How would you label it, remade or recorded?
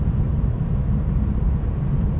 remade